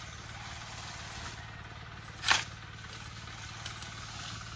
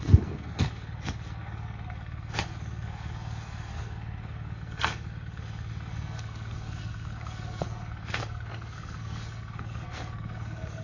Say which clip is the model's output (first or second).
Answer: second